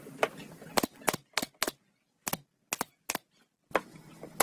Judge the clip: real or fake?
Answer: real